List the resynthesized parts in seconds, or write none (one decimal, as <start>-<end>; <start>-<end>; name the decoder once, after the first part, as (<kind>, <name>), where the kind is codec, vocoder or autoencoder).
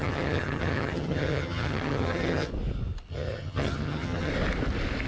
0.0-2.5 (vocoder, HiFi-GAN); 3.1-4.3